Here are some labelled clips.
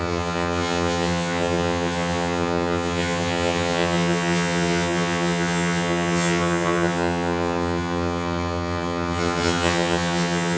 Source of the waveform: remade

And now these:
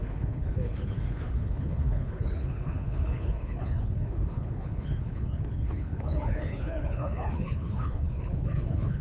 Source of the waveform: remade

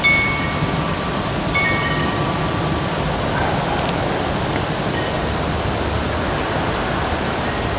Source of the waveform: recorded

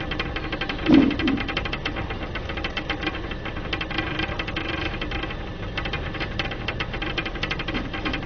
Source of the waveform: remade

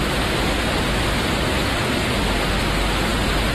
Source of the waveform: recorded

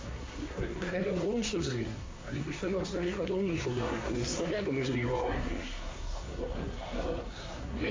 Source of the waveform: remade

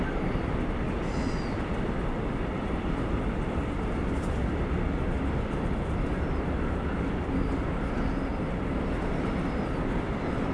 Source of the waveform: recorded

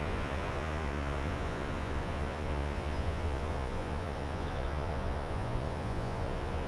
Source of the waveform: remade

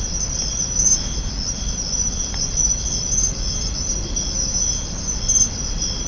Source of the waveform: recorded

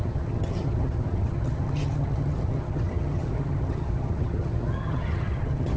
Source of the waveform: remade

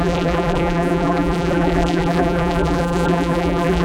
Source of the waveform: remade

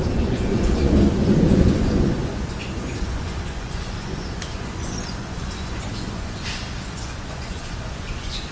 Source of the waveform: remade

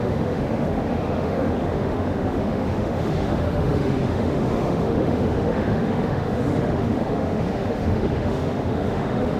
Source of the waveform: remade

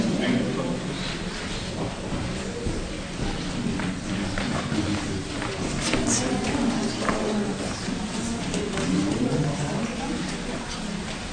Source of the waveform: recorded